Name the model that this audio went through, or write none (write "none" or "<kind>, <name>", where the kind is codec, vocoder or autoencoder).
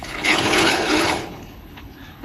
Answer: codec, HILCodec